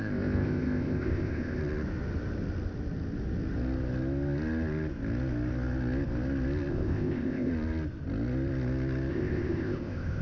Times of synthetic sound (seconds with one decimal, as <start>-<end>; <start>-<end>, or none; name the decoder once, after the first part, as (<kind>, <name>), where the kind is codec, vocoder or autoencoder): 0.0-1.6 (codec, ZipCodec); 6.7-7.5; 9.1-10.2